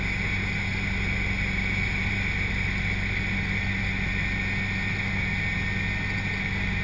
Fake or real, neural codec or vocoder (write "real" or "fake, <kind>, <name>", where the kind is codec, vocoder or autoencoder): real